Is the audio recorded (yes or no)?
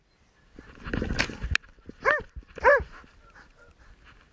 yes